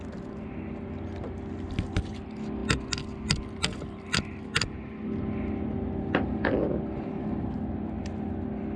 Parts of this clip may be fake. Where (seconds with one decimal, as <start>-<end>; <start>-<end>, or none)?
none